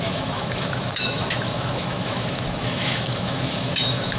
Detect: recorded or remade remade